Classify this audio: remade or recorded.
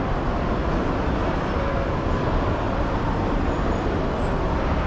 recorded